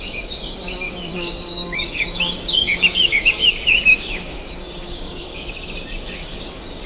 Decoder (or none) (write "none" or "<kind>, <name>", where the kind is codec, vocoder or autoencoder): codec, DAC